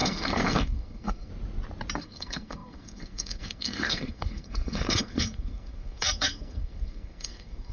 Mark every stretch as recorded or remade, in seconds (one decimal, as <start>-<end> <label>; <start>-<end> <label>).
0.0-1.3 remade; 1.3-2.0 recorded; 2.0-7.7 remade